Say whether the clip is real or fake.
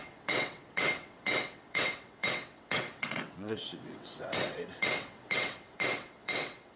fake